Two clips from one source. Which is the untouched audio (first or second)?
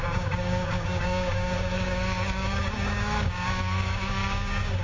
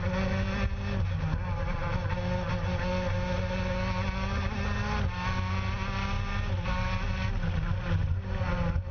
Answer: second